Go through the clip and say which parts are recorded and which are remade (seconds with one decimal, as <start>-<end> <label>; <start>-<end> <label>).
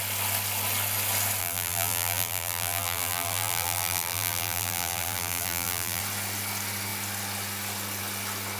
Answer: 0.0-1.4 recorded; 1.4-6.0 remade; 6.0-8.6 recorded